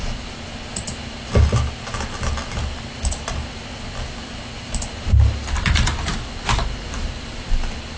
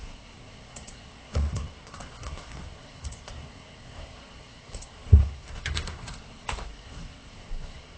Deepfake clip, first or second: second